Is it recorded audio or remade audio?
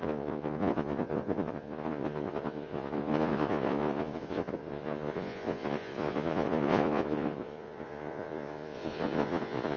remade